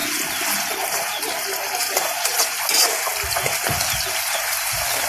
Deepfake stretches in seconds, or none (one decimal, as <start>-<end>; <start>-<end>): none